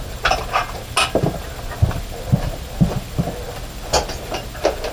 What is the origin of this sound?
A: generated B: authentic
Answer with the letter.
B